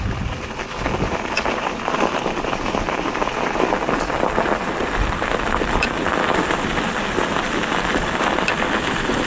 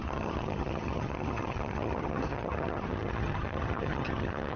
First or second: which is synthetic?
second